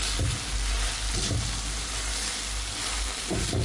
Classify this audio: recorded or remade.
recorded